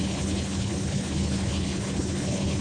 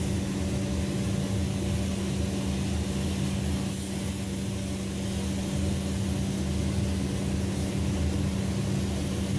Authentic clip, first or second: second